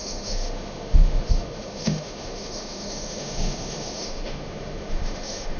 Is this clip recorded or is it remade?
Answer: remade